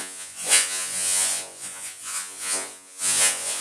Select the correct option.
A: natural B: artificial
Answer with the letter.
B